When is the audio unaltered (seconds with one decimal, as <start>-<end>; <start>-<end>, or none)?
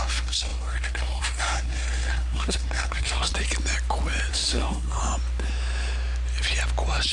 3.3-4.3; 5.0-7.1